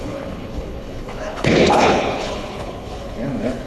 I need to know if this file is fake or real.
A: fake